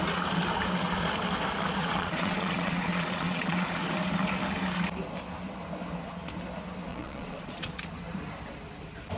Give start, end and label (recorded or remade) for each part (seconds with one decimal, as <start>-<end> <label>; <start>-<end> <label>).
0.0-1.8 recorded; 1.8-3.8 remade; 3.8-6.9 recorded; 6.9-7.7 remade; 7.7-9.2 recorded